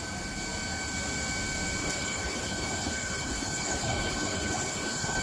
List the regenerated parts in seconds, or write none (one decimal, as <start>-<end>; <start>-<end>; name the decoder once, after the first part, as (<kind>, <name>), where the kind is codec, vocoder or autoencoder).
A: 1.8-5.2 (codec, HILCodec)